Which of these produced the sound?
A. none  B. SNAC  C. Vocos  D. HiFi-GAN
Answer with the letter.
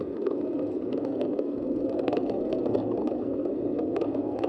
B